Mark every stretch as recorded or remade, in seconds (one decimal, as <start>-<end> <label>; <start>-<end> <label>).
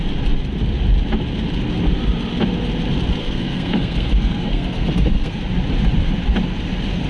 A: 0.0-3.2 recorded; 3.2-5.4 remade; 5.4-7.1 recorded